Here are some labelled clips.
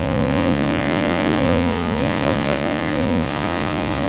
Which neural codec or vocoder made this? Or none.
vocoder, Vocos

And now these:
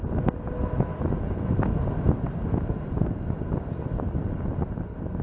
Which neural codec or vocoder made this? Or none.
none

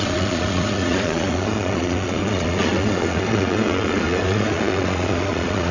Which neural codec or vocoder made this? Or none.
vocoder, Vocos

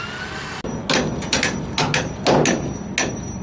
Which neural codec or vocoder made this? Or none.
none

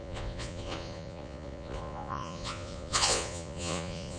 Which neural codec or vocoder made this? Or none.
vocoder, Vocos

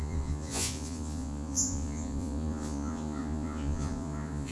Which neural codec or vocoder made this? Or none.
vocoder, Vocos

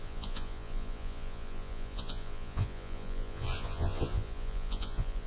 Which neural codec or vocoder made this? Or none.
vocoder, Vocos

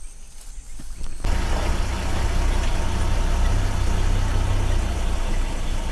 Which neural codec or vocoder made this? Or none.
none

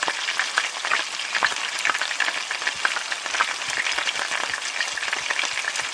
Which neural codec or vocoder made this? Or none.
none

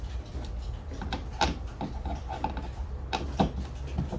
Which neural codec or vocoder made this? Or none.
none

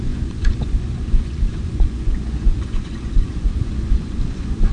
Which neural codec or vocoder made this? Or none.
vocoder, Vocos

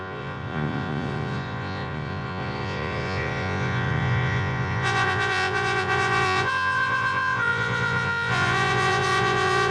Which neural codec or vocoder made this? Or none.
vocoder, Vocos